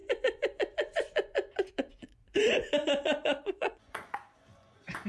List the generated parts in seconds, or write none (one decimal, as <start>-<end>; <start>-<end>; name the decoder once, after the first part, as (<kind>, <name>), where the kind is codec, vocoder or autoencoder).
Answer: 0.0-5.1 (vocoder, Vocos)